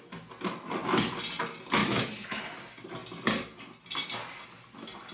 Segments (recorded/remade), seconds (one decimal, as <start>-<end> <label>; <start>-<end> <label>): 0.0-1.8 recorded; 1.8-2.4 remade; 2.4-5.1 recorded